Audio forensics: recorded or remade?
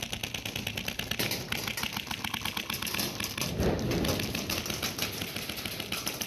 recorded